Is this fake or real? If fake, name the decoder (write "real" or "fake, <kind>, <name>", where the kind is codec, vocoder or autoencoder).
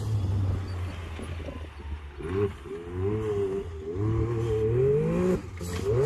real